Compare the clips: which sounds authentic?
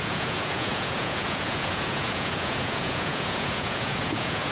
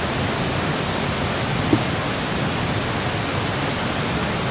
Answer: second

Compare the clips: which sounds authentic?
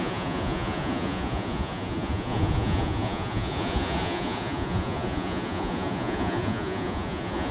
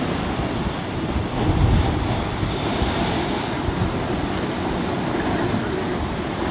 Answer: second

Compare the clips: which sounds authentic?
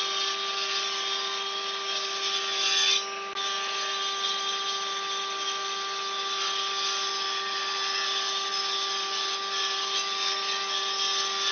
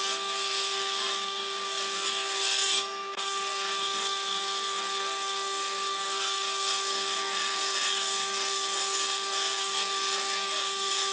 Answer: first